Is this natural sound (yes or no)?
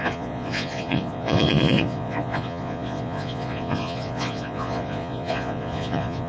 no